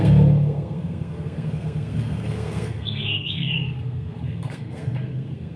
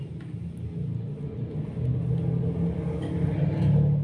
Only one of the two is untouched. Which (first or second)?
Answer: second